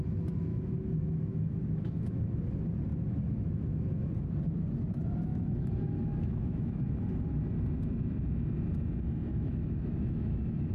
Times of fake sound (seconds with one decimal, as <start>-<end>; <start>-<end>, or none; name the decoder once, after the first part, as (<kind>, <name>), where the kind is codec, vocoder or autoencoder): 0.5-2.3 (autoencoder, DAC-VAE); 2.9-4.1; 5.3-7.0; 9.3-10.7